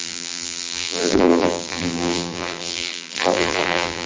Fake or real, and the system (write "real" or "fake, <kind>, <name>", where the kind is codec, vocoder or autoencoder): fake, vocoder, BigVGAN v2